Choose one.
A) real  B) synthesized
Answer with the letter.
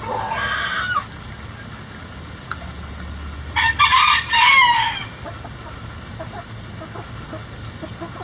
A